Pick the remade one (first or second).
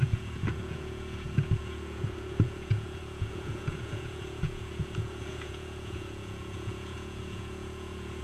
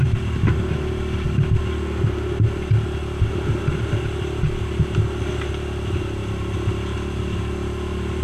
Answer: first